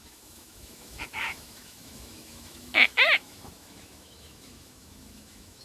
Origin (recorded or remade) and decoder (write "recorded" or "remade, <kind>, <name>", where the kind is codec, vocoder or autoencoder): remade, autoencoder, DAC-VAE